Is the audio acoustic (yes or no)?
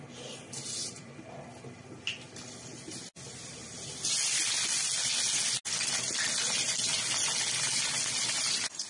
yes